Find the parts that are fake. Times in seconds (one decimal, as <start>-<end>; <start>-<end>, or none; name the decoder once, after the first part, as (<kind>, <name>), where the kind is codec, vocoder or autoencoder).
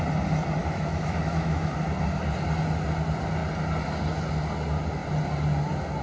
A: 0.6-1.7 (autoencoder, DAC-VAE)